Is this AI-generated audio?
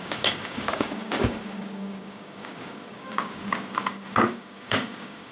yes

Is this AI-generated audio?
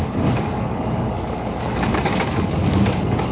yes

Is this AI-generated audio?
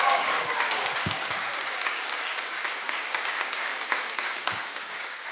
yes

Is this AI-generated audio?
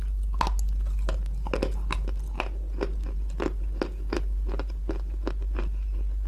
no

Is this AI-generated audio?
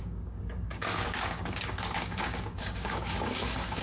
yes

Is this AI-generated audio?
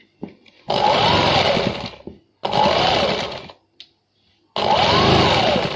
no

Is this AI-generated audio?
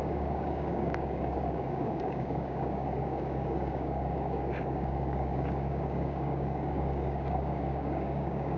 yes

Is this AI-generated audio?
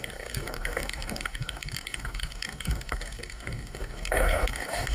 yes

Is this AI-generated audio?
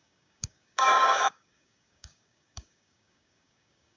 yes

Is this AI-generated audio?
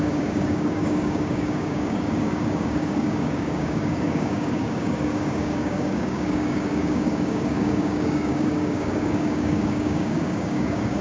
yes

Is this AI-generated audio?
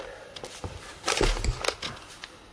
no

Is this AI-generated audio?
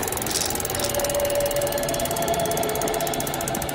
no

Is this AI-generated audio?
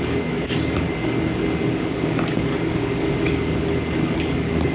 yes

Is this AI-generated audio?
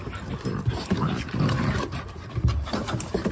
no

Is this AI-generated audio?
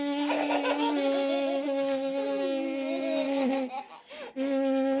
no